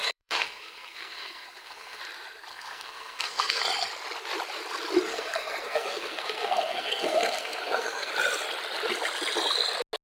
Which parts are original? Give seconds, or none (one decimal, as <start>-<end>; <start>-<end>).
2.0-2.5; 3.6-5.1; 8.1-10.0